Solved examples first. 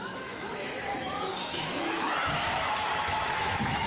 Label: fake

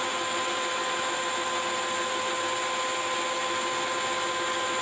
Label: real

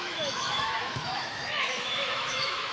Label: fake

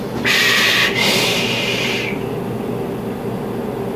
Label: real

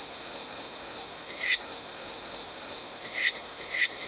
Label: fake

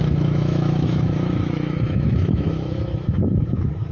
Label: fake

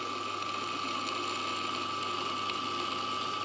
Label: real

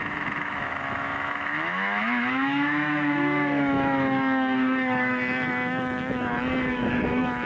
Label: fake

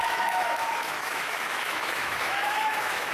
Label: fake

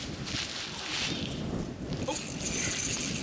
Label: real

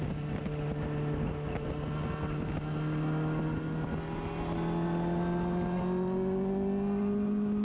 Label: real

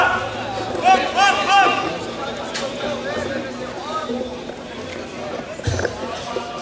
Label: real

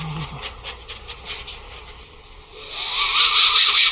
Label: real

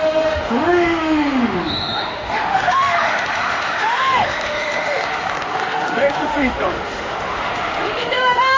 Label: fake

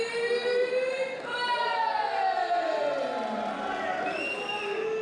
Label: real